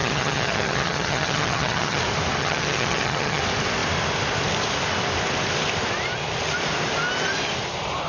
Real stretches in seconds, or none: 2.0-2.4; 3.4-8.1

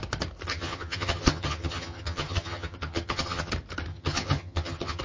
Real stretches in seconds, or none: 0.0-0.5; 3.5-3.9

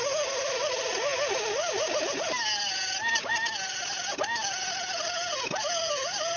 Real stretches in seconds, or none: 0.0-6.4

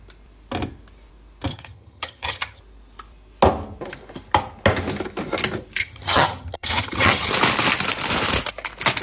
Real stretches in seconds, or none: 0.0-1.5; 2.6-5.8; 7.3-9.0

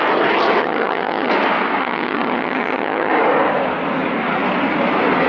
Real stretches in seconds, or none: 0.0-0.6; 1.3-1.8; 3.1-5.3

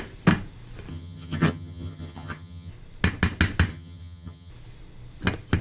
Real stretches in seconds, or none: 0.0-0.9; 2.7-3.7; 4.5-5.6

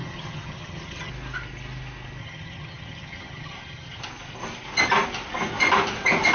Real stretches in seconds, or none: 1.1-2.2; 4.0-6.3